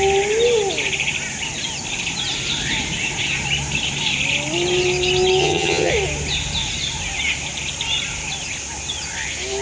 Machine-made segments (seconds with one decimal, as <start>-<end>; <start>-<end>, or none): 5.4-5.9